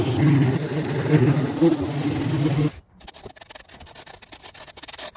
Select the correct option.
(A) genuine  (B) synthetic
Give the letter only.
A